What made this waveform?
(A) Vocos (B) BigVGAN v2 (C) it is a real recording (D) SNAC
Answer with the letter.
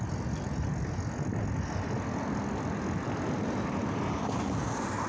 C